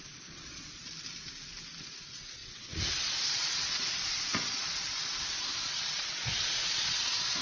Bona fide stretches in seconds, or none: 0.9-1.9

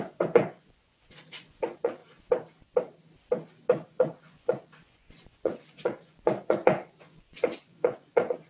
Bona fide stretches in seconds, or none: 2.0-3.9

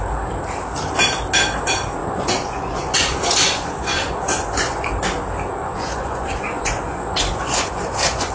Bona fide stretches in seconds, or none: 0.0-2.0; 4.9-5.6

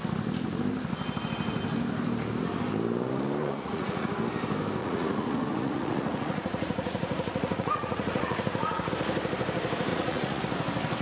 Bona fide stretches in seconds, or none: 0.0-3.4; 4.1-4.8; 8.9-9.9; 10.4-11.0